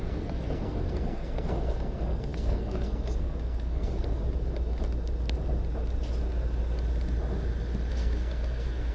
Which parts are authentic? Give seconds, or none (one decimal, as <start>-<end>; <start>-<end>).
4.2-7.9